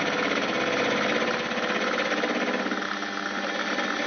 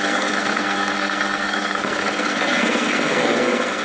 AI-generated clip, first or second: second